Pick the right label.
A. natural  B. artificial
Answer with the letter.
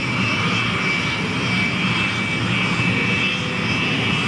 A